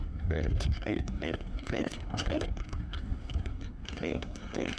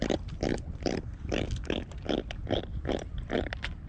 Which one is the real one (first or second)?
second